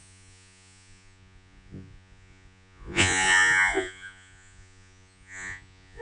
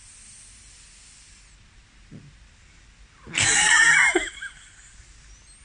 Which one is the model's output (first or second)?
first